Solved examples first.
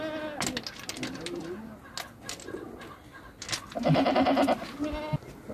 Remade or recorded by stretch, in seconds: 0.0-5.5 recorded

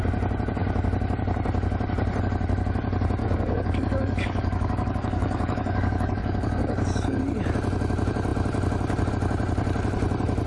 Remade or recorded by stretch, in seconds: 0.0-3.2 recorded; 3.2-7.2 remade; 7.2-10.5 recorded

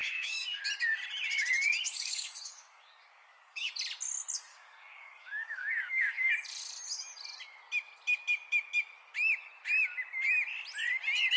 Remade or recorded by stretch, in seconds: 0.0-0.6 remade; 0.6-1.8 recorded; 1.8-3.7 remade; 3.7-4.5 recorded; 4.5-6.3 remade; 6.3-11.4 recorded

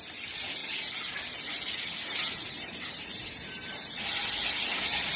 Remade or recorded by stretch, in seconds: 0.0-5.2 recorded

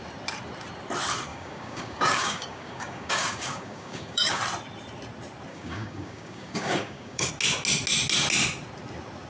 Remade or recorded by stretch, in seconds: 0.0-1.3 recorded; 1.3-4.4 remade; 4.4-5.5 recorded; 5.5-7.3 remade; 7.3-9.3 recorded

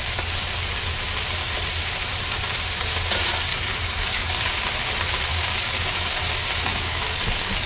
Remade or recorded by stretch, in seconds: 0.0-3.5 recorded; 3.5-4.5 remade; 4.5-5.3 recorded; 5.3-6.2 remade; 6.2-6.7 recorded; 6.7-7.7 remade

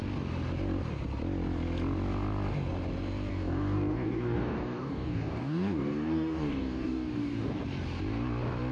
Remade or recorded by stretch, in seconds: 0.0-3.3 recorded; 3.3-7.6 remade; 7.6-8.7 recorded

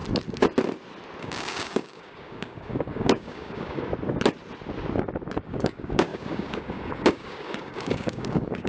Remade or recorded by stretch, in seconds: 0.0-1.2 recorded; 1.2-3.9 remade; 3.9-5.4 recorded; 5.4-8.7 remade